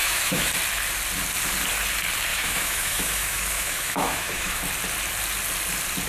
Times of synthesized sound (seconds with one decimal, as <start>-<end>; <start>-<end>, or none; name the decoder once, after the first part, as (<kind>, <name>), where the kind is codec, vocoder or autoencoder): 0.0-0.5 (autoencoder, DAC-VAE); 2.3-4.6